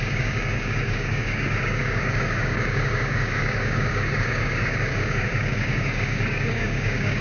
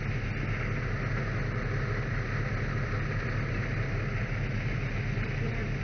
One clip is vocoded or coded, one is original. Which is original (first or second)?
second